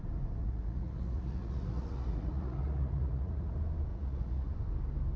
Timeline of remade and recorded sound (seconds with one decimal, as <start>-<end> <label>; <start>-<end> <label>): 0.0-0.4 recorded; 0.4-3.5 remade; 3.5-3.9 recorded; 3.9-4.5 remade; 4.5-5.2 recorded